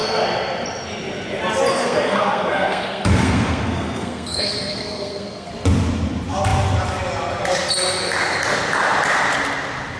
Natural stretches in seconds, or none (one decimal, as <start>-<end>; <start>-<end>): 0.0-1.7; 5.5-10.0